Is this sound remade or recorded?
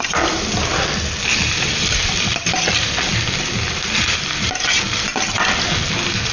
remade